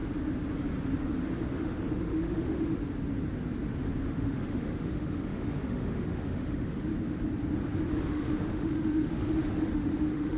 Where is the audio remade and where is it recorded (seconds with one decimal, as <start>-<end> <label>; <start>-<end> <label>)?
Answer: 0.0-1.6 recorded; 1.6-2.8 remade; 2.8-4.0 recorded; 4.0-6.9 remade; 6.9-8.0 recorded; 8.0-10.4 remade